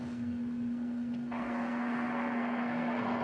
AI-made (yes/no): yes